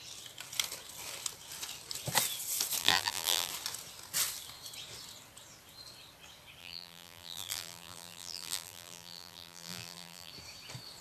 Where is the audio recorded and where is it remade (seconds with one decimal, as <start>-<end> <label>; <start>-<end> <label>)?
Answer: 0.0-2.8 recorded; 2.8-3.5 remade; 3.5-6.6 recorded; 6.6-10.3 remade; 10.3-11.0 recorded